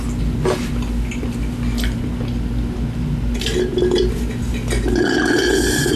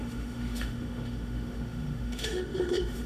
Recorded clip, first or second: first